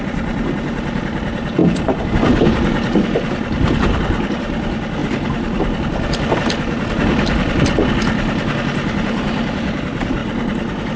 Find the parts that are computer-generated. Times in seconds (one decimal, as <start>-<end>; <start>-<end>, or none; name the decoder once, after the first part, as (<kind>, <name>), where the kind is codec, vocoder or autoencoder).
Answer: none